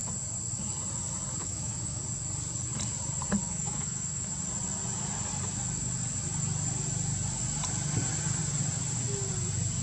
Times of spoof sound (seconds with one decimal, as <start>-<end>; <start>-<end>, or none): 1.4-2.0; 3.4-4.3